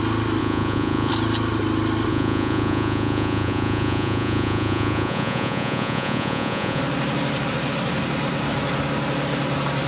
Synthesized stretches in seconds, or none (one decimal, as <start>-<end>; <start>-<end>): 0.4-1.1; 2.1-6.8